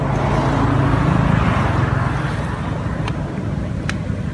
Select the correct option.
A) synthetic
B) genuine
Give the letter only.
B